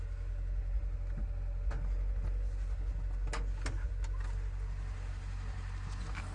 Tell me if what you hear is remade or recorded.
recorded